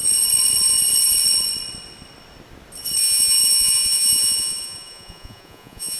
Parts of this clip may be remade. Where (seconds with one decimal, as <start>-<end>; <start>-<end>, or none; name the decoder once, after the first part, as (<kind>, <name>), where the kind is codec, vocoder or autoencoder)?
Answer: 3.0-6.0 (vocoder, Vocos)